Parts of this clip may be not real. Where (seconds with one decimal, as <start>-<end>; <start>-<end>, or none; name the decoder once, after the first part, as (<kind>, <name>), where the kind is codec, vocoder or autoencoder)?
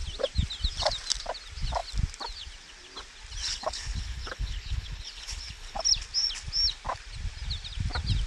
3.4-5.8 (codec, HILCodec)